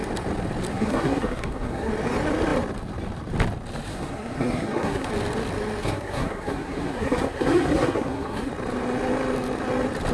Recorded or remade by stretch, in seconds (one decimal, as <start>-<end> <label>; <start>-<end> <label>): 0.0-0.7 recorded; 0.7-1.9 remade; 1.9-3.9 recorded; 3.9-5.1 remade; 5.1-5.8 recorded; 5.8-8.5 remade; 8.5-10.1 recorded